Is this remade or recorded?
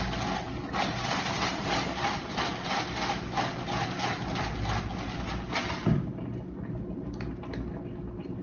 recorded